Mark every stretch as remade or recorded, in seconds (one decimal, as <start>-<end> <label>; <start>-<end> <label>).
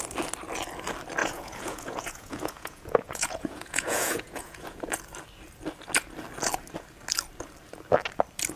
0.0-1.2 recorded; 1.2-4.8 remade; 4.8-8.6 recorded